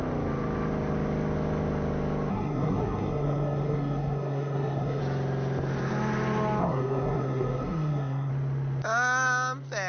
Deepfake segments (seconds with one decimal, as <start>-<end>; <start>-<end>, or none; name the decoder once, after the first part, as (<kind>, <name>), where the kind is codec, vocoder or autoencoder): 2.3-5.0 (codec, SNAC); 6.6-8.3